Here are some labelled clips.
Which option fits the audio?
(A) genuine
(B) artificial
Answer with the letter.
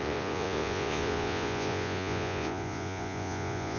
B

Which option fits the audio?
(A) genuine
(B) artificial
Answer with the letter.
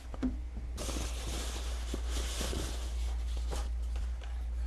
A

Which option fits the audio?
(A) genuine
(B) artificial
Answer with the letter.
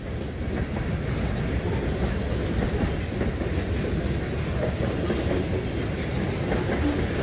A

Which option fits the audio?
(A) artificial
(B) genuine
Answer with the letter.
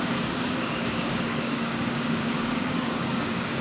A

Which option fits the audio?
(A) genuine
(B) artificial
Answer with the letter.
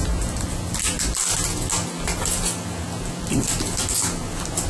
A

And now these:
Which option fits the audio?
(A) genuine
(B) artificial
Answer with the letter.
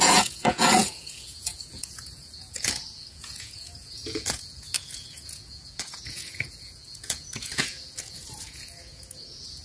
B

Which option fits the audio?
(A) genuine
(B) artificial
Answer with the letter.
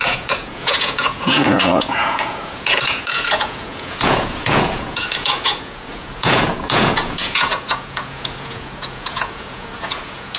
B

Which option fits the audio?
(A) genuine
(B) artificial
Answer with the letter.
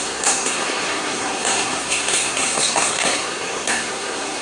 B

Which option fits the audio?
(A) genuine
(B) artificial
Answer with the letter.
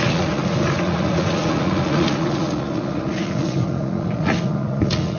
B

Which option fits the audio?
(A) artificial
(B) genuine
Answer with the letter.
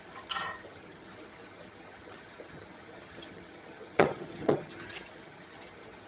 A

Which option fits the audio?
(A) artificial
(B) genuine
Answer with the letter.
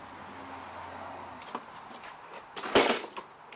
B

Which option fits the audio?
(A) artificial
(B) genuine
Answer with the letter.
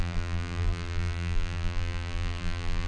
A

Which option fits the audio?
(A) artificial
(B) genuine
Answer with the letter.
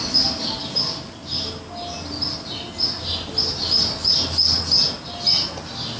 B